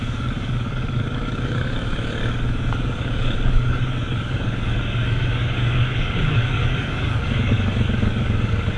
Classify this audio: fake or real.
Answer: fake